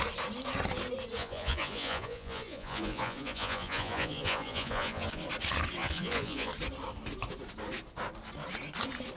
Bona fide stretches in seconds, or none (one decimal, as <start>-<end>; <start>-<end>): 0.0-1.2; 5.2-5.8; 6.5-9.2